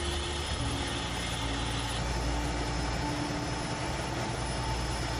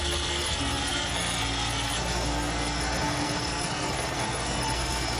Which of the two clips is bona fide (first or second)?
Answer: first